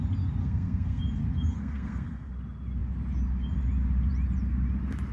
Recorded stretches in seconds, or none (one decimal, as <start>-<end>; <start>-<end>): 0.0-0.4; 1.0-1.5; 2.3-5.1